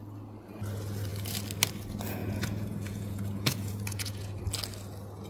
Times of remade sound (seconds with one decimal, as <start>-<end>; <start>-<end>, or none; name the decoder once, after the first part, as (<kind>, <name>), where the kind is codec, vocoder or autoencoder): 2.2-4.4 (vocoder, Vocos)